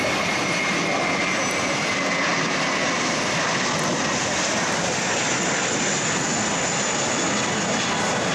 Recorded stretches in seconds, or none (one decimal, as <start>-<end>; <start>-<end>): 0.0-8.3